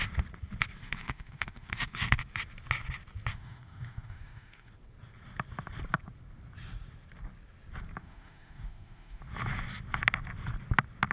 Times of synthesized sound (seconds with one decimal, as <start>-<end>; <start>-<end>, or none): 0.8-2.2; 3.3-4.7; 8.0-9.2